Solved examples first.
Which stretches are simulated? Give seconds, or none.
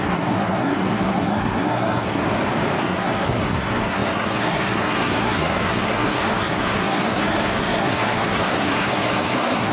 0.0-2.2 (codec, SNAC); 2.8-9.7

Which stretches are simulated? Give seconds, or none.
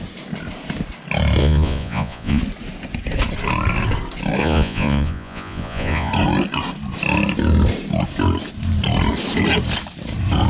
1.4-2.4 (vocoder, Vocos); 4.4-6.1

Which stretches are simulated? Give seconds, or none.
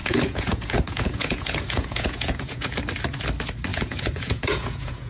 0.0-2.8 (vocoder, Vocos); 3.7-5.1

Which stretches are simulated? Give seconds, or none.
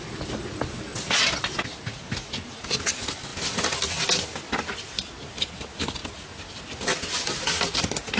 none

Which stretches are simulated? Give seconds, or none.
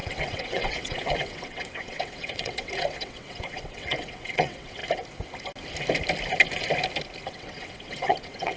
0.0-4.8 (vocoder, WaveNeXt); 7.3-8.6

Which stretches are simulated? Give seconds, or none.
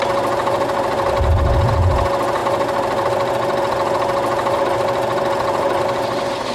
none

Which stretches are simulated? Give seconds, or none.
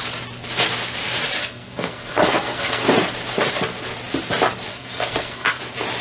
1.4-2.8 (codec, SNAC); 4.7-5.6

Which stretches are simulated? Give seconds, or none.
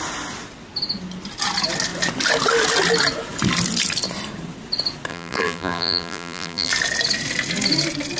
5.1-6.7 (vocoder, BigVGAN v2)